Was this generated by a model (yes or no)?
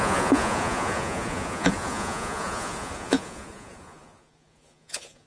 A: yes